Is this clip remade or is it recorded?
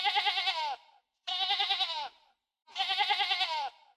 remade